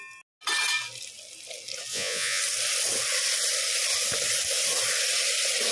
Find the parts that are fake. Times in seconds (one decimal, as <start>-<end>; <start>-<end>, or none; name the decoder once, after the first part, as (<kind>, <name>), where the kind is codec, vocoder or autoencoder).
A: 1.9-2.4 (vocoder, Vocos)

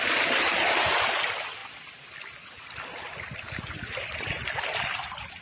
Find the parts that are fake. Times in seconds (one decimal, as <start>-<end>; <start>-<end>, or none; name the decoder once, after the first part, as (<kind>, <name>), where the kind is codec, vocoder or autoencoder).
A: none

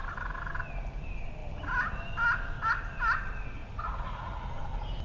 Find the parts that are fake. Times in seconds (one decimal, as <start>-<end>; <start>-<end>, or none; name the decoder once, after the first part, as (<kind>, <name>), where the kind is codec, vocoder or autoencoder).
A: 3.6-4.5 (vocoder, Vocos)